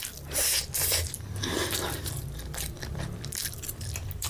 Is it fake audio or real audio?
fake